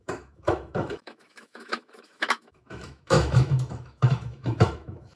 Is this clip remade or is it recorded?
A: remade